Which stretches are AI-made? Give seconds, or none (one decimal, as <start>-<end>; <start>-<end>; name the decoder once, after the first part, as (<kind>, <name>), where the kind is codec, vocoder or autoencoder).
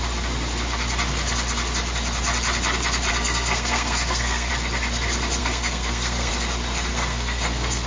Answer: 3.1-4.5 (codec, SNAC); 5.4-6.3; 6.9-7.9